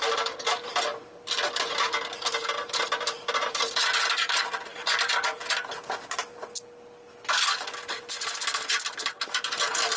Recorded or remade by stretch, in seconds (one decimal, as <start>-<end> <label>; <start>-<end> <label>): 0.0-10.0 recorded